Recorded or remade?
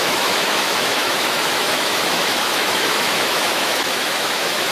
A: remade